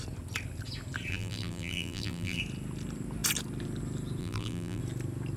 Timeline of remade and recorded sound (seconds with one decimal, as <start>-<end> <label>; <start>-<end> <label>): 0.0-1.1 recorded; 1.1-2.4 remade; 2.4-4.2 recorded; 4.2-4.8 remade; 4.8-5.4 recorded